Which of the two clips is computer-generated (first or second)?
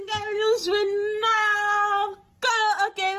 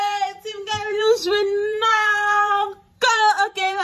second